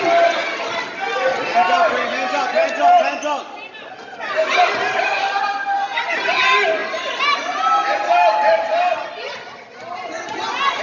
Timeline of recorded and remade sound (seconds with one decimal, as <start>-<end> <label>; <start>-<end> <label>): 0.0-10.8 recorded